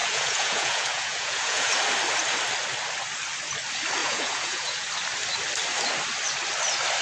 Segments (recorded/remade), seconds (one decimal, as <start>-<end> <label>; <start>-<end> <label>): 0.0-1.7 remade; 1.7-4.0 recorded; 4.0-4.9 remade; 4.9-7.0 recorded